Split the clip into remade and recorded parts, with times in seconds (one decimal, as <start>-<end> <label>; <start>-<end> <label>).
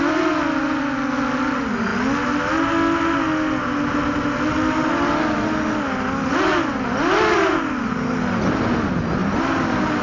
0.0-6.5 recorded; 6.5-7.6 remade; 7.6-9.2 recorded; 9.2-10.0 remade